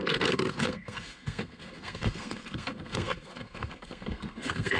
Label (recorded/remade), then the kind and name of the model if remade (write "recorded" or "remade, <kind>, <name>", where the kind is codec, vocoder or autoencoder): remade, codec, SNAC